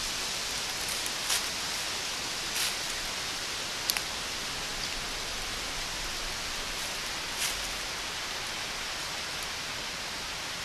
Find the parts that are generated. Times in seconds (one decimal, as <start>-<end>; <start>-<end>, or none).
none